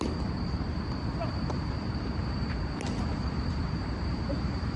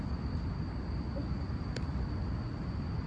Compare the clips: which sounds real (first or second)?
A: second